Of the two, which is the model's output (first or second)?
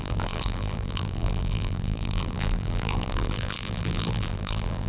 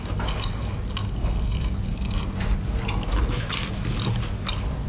first